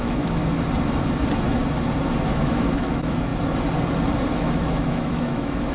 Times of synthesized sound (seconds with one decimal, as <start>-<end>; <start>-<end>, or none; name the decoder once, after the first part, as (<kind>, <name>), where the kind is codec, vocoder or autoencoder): 0.0-0.4 (autoencoder, DAC-VAE); 2.3-3.3; 4.3-5.7